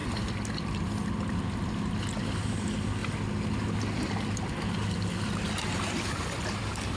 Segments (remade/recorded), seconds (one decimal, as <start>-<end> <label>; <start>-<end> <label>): 0.0-7.0 recorded